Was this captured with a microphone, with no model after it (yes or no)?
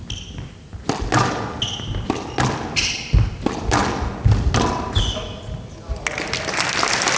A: yes